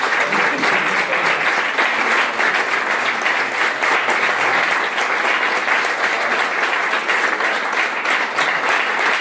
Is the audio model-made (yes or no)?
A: no